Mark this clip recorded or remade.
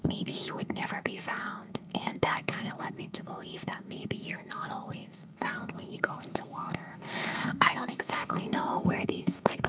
remade